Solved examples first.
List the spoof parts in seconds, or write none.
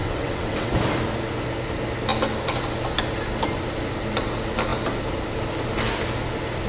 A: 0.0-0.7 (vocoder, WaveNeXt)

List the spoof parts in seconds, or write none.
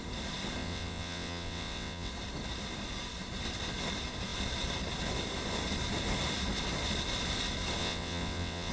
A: 0.6-2.1 (vocoder, WaveNeXt); 7.8-8.7